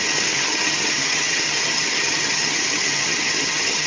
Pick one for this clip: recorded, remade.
remade